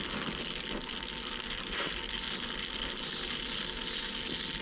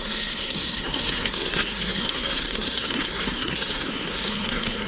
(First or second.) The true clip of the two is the first